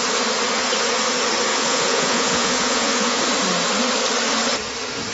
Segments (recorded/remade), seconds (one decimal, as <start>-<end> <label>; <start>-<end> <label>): 0.0-1.5 recorded; 1.5-3.2 remade; 3.2-5.1 recorded